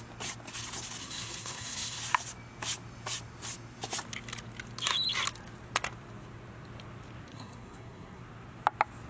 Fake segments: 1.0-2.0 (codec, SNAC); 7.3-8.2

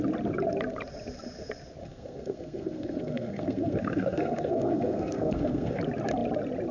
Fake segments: 1.8-5.8 (codec, SNAC)

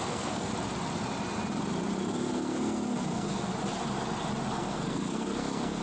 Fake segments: 0.0-0.5 (codec, SNAC); 2.1-3.5; 4.5-5.8